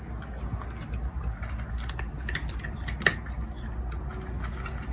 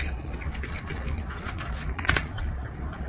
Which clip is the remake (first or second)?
second